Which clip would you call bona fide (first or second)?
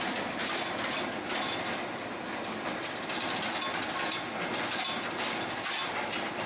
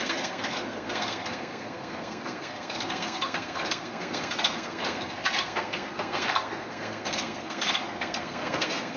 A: first